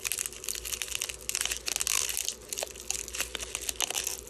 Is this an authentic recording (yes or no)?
yes